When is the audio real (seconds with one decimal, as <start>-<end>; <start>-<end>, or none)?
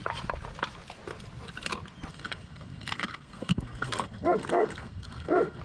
0.0-2.1